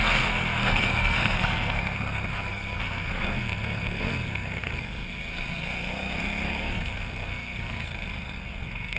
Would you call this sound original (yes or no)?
no